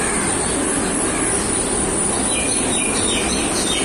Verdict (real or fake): fake